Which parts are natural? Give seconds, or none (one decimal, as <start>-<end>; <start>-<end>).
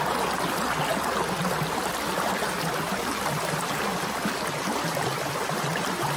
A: 0.9-4.6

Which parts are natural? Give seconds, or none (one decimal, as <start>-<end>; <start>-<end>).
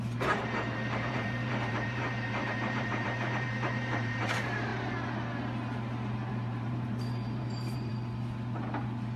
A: 4.7-6.3; 7.9-9.2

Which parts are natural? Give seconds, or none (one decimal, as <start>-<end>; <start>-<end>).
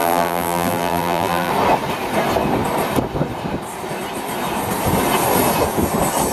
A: 1.5-6.3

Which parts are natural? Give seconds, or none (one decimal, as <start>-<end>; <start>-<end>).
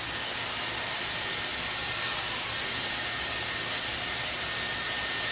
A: 0.0-5.3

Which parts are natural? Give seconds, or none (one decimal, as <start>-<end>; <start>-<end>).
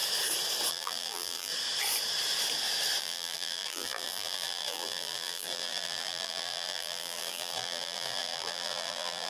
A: 0.0-0.7; 1.5-3.0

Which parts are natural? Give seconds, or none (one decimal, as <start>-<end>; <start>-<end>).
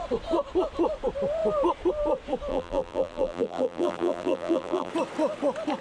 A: 0.0-2.5; 4.9-5.8